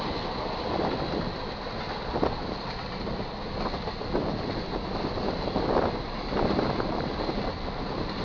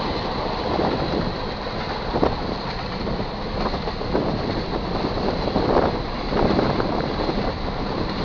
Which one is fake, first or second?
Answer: second